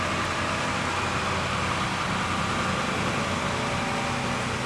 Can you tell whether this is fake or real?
real